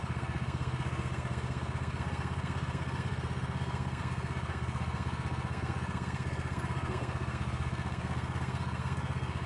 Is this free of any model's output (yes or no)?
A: no